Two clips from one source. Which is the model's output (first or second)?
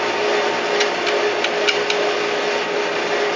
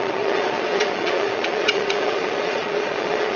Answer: second